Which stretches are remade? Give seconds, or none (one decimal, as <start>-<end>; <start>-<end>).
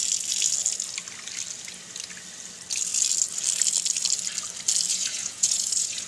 4.9-6.1